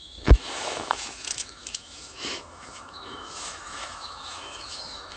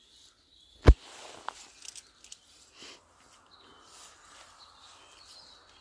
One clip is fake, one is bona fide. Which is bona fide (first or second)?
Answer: second